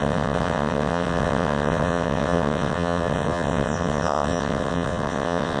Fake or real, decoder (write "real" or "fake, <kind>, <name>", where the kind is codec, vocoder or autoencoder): fake, vocoder, WaveNeXt